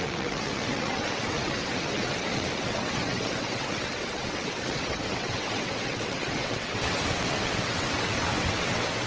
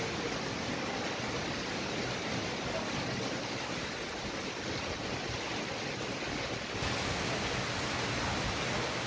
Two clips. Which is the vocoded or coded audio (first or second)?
first